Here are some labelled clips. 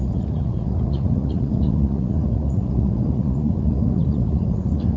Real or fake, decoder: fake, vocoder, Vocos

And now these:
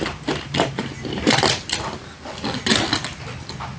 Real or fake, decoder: real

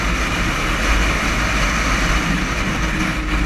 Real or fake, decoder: real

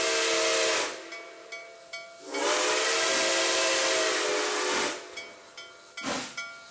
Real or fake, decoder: real